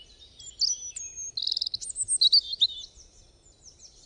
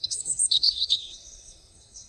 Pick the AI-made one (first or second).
second